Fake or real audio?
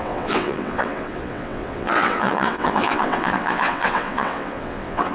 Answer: fake